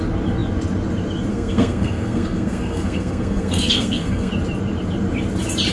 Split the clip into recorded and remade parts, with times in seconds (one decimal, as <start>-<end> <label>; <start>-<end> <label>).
0.0-1.3 recorded; 1.3-4.3 remade; 4.3-5.7 recorded